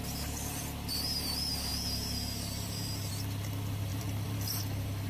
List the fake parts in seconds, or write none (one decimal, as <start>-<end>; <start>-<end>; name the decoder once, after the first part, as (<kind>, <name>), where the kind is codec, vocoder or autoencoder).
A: 1.7-3.1 (vocoder, BigVGAN v2); 3.9-4.6